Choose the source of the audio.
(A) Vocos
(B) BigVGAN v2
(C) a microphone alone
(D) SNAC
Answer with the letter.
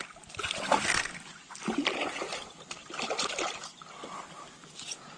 C